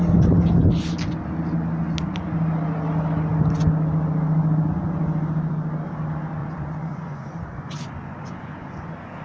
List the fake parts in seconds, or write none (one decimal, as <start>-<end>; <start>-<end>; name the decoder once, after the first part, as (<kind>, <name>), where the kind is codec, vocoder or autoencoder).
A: 6.4-9.2 (vocoder, Vocos)